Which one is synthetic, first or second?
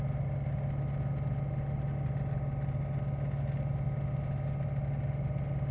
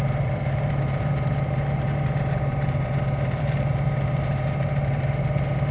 second